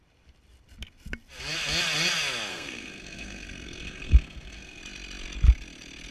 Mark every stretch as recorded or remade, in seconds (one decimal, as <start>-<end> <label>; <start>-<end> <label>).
0.0-2.5 recorded; 2.5-4.8 remade; 4.8-6.1 recorded